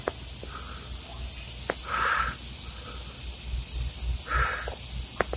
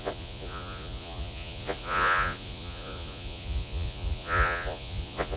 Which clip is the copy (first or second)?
second